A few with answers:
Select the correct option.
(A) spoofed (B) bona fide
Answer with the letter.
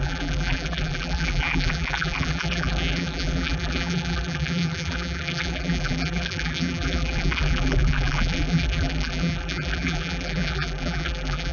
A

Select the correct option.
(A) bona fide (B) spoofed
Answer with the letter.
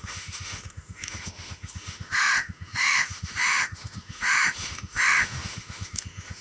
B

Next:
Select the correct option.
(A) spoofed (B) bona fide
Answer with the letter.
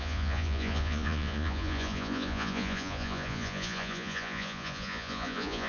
A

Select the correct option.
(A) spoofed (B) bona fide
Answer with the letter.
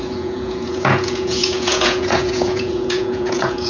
A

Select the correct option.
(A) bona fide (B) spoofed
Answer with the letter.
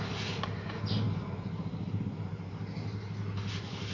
A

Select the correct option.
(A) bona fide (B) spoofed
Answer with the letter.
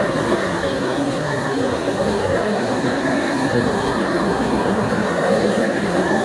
B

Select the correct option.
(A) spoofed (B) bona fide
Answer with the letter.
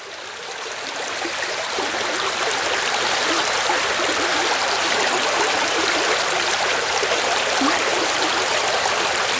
A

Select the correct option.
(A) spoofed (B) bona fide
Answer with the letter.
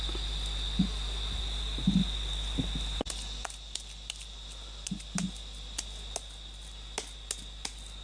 B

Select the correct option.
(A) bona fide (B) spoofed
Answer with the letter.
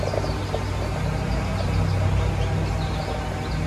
A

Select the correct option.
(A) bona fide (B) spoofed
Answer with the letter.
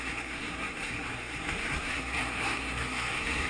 B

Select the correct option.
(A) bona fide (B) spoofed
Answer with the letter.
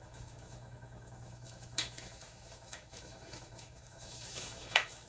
B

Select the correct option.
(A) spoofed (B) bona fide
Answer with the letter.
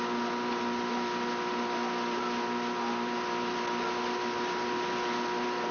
B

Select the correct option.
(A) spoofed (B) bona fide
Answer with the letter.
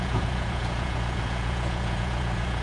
A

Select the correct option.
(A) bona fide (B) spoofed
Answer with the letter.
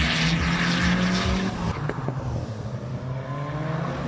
A